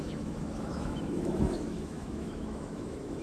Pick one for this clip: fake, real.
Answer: fake